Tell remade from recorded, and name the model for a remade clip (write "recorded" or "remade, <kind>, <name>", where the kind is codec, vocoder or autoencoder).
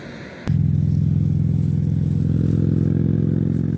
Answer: recorded